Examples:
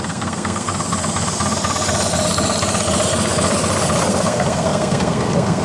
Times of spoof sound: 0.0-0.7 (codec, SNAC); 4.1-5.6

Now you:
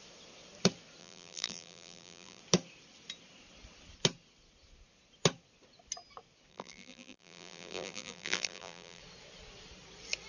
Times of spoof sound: 1.0-2.4 (vocoder, BigVGAN v2); 6.5-9.0

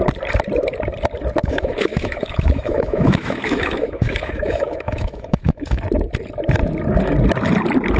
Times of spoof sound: 1.4-5.8 (autoencoder, DAC-VAE)